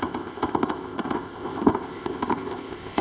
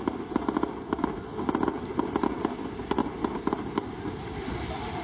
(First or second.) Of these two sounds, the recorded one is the second